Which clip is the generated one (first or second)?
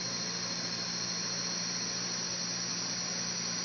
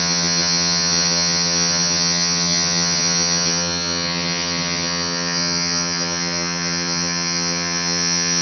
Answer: second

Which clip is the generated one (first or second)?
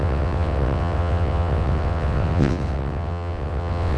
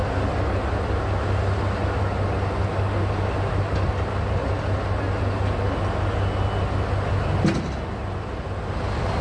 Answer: first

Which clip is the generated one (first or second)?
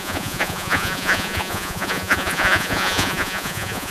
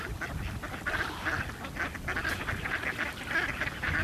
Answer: first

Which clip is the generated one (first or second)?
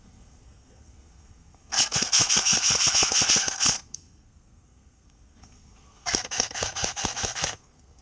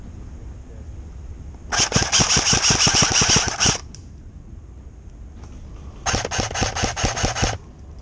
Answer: first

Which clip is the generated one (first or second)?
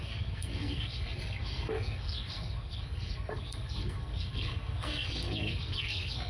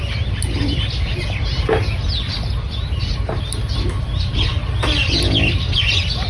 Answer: first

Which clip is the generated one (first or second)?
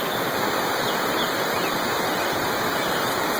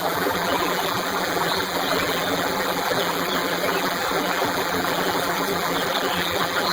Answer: second